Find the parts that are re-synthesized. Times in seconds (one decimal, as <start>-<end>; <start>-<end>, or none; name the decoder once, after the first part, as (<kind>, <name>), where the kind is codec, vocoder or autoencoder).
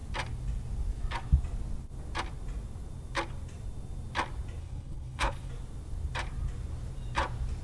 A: 4.6-5.5 (codec, HILCodec)